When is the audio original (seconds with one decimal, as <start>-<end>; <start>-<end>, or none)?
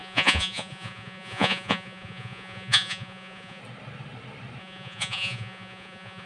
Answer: 3.6-4.6